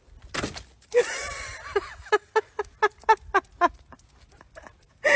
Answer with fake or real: real